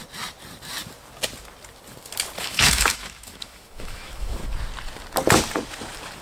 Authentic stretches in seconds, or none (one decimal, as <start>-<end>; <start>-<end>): 0.0-2.4; 4.4-6.2